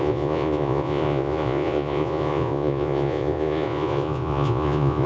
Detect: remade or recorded remade